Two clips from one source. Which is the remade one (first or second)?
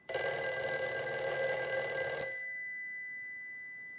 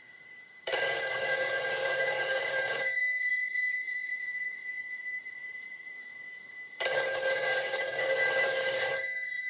second